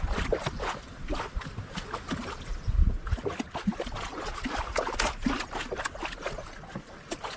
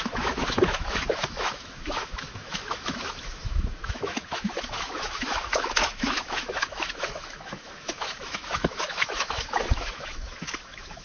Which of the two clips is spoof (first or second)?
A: second